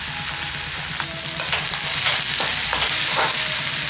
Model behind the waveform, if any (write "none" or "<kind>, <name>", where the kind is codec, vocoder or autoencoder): none